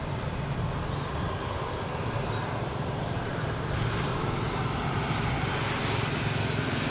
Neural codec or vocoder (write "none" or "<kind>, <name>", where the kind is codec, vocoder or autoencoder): none